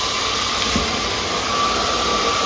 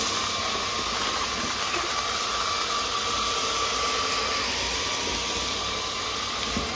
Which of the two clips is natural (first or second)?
second